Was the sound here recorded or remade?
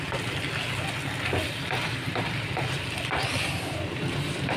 recorded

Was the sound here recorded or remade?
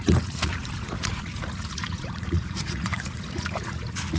remade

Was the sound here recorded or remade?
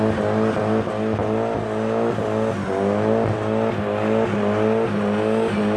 recorded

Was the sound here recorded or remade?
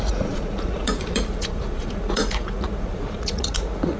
remade